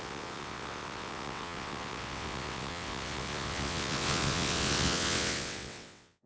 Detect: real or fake fake